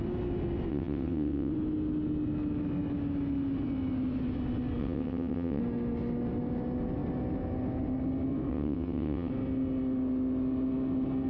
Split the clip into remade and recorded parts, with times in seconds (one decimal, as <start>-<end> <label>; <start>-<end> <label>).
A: 0.0-0.7 recorded; 0.7-1.5 remade; 1.5-4.8 recorded; 4.8-5.6 remade; 5.6-8.5 recorded; 8.5-9.3 remade; 9.3-11.3 recorded